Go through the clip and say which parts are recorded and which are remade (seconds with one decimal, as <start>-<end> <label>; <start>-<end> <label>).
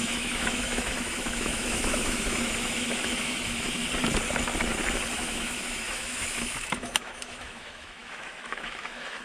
0.0-3.8 remade; 3.8-5.2 recorded; 5.2-9.2 remade